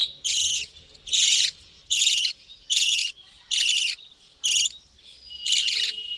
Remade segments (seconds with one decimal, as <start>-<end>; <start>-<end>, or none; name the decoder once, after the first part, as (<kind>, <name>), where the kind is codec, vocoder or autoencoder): 0.0-3.0 (vocoder, Vocos); 5.6-6.2